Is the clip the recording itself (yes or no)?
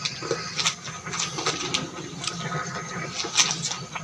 yes